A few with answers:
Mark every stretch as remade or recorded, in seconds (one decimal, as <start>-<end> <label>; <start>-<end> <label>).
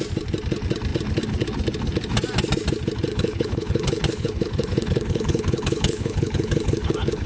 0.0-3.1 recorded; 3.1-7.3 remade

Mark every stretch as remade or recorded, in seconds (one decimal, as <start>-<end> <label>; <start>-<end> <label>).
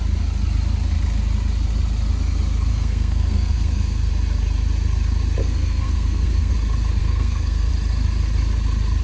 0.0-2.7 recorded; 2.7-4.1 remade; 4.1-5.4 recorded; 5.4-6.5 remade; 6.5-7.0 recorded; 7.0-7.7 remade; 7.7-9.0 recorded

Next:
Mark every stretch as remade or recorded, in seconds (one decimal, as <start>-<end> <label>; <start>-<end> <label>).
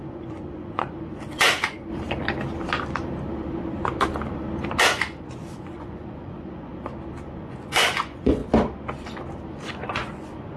0.0-1.9 remade; 1.9-4.8 recorded; 4.8-6.7 remade; 6.7-7.4 recorded; 7.4-8.4 remade; 8.4-9.5 recorded; 9.5-10.6 remade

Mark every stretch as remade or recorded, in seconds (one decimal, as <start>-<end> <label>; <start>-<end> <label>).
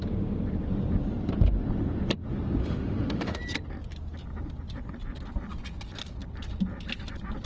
0.0-2.6 recorded; 2.6-3.4 remade; 3.4-7.5 recorded